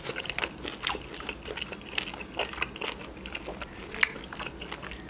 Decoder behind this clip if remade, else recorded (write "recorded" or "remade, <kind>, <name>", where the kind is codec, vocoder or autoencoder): recorded